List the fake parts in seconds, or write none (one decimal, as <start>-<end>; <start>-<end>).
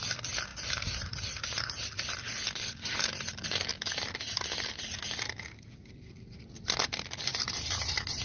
0.5-1.7; 7.3-8.2